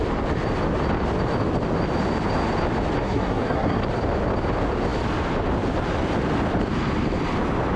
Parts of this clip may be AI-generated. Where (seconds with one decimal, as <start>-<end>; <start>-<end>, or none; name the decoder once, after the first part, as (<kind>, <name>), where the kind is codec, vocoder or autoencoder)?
3.0-3.8 (codec, SNAC)